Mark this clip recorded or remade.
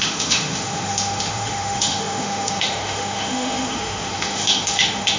remade